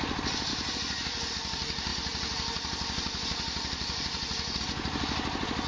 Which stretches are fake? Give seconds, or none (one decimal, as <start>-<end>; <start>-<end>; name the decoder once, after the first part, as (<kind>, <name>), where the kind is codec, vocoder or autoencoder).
0.5-1.3 (vocoder, BigVGAN v2); 1.9-4.6